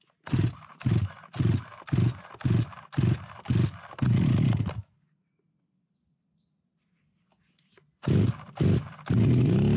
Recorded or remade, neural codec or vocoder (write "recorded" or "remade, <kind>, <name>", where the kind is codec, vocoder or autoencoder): recorded